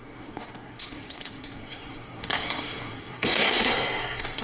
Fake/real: fake